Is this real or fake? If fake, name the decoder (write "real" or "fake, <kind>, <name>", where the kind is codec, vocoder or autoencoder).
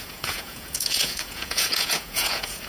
fake, vocoder, Vocos